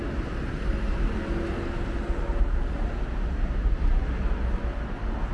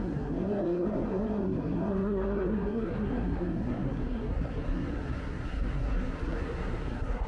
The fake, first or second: second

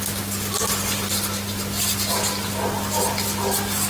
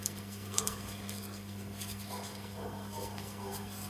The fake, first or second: second